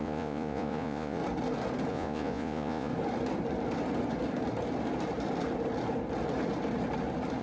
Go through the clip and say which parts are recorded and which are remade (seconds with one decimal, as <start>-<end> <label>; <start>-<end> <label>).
0.0-1.2 remade; 1.2-1.9 recorded; 1.9-2.9 remade; 2.9-7.4 recorded